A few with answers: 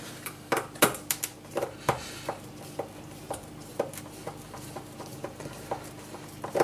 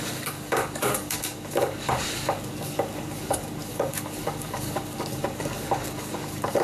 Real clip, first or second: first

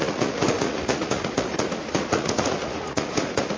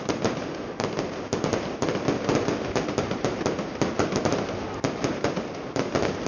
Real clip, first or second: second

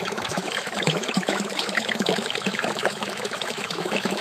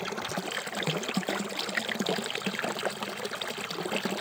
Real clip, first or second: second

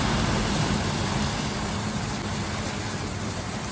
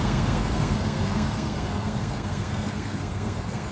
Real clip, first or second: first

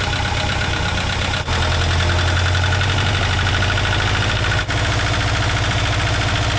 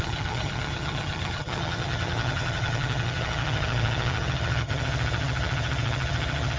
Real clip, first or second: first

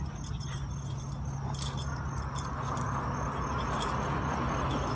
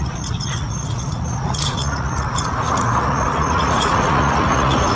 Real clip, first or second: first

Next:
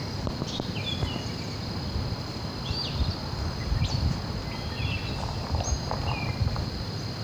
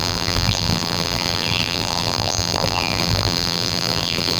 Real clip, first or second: first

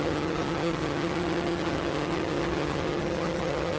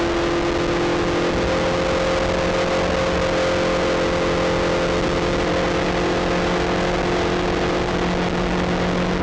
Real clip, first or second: second